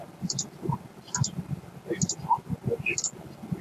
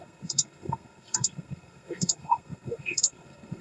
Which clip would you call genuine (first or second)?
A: first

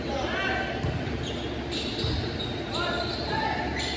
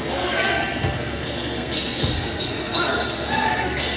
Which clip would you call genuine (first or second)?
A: first